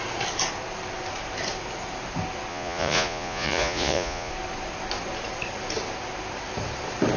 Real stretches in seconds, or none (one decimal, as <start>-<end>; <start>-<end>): 0.0-2.5; 4.3-7.2

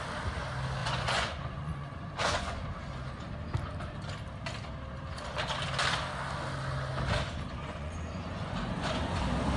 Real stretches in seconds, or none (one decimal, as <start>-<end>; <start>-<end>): 0.0-0.8; 2.6-7.6; 9.2-9.6

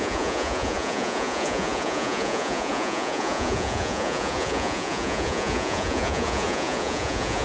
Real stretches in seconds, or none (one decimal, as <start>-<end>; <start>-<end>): none

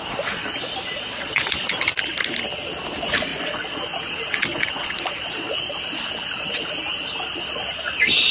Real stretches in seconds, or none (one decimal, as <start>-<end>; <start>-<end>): 0.0-0.9; 1.5-3.3; 3.8-4.5; 5.5-8.3

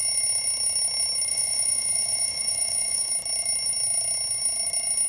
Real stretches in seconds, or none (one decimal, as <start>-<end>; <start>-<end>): 0.0-1.3; 3.1-5.1